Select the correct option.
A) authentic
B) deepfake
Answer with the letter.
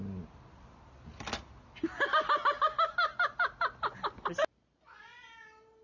A